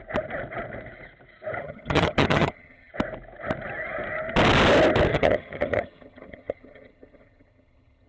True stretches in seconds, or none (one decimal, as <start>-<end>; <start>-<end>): 0.0-1.6; 2.9-5.1